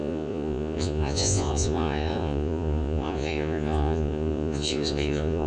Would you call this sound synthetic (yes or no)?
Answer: yes